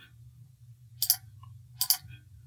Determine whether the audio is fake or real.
real